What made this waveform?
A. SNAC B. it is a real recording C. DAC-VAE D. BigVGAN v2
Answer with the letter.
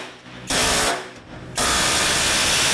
B